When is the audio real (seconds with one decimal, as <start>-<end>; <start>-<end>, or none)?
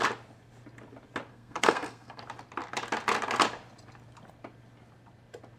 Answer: 0.0-1.3; 2.2-5.6